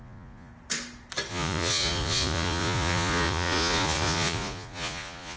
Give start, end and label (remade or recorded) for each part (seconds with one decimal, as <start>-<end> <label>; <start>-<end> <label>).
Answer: 0.0-0.5 remade; 0.5-1.3 recorded; 1.3-5.4 remade